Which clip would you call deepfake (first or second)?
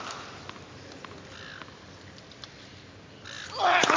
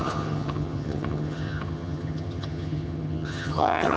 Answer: second